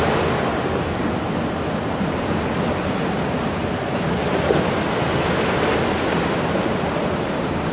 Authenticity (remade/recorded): recorded